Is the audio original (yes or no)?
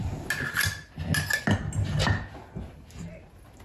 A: yes